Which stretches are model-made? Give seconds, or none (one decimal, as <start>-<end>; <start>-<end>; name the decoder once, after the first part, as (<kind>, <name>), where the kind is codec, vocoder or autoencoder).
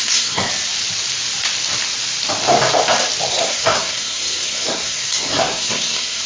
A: 0.0-0.5 (codec, SNAC); 3.3-6.3